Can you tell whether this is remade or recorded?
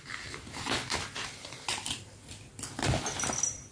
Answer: recorded